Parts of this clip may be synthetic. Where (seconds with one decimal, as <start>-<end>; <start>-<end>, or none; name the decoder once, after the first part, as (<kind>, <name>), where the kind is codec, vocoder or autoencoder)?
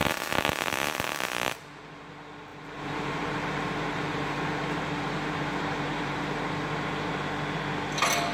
0.0-2.1 (vocoder, BigVGAN v2); 2.5-6.4